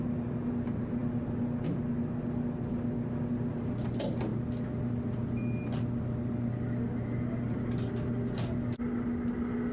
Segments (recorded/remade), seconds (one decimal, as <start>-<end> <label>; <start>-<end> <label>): 0.0-9.7 recorded